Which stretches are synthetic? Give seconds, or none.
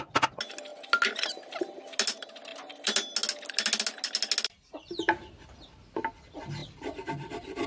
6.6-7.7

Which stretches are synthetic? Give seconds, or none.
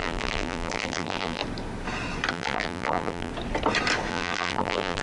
0.0-1.4; 2.3-3.3; 4.1-5.0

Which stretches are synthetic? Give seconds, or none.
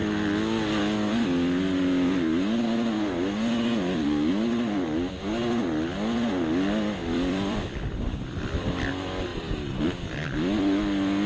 7.0-8.9; 9.3-9.8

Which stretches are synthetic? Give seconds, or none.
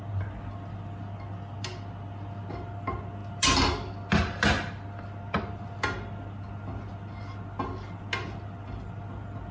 none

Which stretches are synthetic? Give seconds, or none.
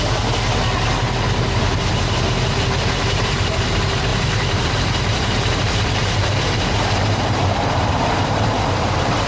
4.1-8.7